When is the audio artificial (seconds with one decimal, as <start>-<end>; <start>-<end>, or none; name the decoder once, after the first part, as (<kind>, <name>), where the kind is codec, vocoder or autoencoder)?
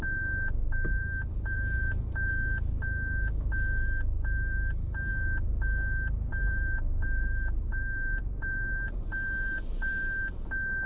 1.0-2.3 (vocoder, BigVGAN v2); 3.8-5.1; 6.3-10.5